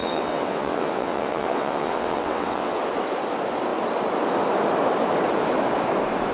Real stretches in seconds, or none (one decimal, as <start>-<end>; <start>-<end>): 2.8-6.3